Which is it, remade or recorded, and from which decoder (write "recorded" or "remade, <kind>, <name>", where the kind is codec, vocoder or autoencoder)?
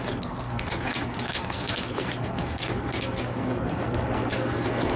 remade, codec, SNAC